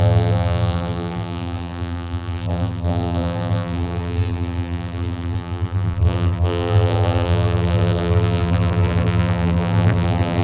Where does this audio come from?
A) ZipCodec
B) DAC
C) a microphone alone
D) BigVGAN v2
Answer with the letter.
D